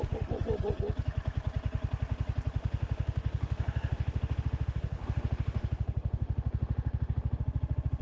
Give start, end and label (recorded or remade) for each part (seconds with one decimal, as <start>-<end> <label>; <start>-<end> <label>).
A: 0.0-2.6 recorded; 2.6-7.4 remade; 7.4-8.0 recorded